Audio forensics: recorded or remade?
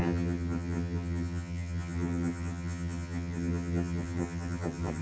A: remade